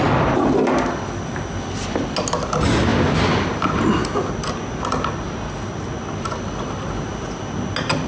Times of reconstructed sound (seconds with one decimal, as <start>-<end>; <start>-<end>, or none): none